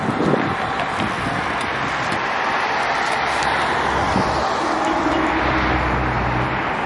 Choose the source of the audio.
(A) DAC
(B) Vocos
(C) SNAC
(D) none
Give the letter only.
D